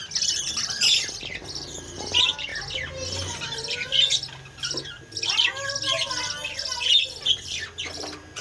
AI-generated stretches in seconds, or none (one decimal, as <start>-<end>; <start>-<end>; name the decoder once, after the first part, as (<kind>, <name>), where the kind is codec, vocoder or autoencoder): none